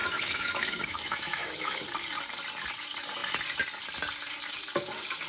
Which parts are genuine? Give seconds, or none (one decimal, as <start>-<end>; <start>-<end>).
1.8-5.3